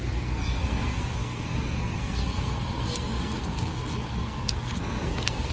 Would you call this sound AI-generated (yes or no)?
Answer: yes